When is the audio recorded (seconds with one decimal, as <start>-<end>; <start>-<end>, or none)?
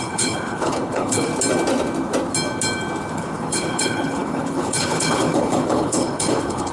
1.3-3.1